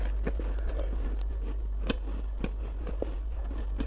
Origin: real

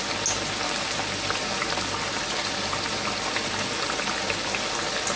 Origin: real